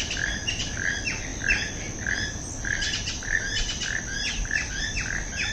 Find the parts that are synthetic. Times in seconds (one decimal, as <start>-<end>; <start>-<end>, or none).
none